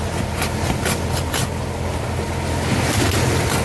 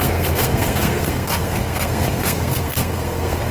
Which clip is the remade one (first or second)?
second